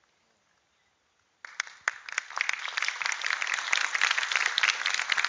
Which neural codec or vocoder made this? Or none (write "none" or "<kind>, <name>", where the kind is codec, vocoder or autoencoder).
none